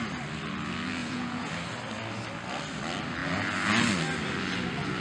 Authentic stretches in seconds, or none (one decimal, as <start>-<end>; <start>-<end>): 0.0-1.0; 1.5-5.0